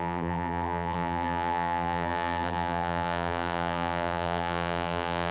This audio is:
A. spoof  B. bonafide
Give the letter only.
A